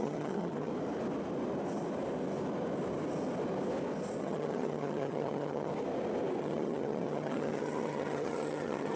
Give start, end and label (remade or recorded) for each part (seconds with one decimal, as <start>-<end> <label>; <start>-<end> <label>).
0.0-0.7 remade; 0.7-4.2 recorded; 4.2-5.7 remade; 5.7-6.4 recorded; 6.4-9.0 remade